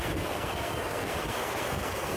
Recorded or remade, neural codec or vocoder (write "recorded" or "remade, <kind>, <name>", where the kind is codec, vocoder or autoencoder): remade, codec, SNAC